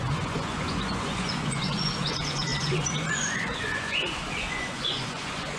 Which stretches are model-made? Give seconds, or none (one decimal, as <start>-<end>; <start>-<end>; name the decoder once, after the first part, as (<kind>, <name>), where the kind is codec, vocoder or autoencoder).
0.0-5.6 (vocoder, Vocos)